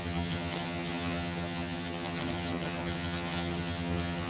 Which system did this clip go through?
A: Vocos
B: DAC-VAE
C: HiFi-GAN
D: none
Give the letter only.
C